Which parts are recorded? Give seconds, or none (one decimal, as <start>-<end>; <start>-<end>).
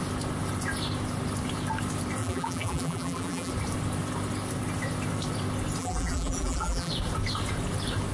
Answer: 0.0-2.2; 3.5-5.8; 6.9-8.1